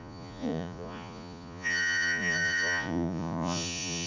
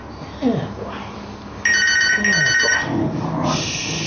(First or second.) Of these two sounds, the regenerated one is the first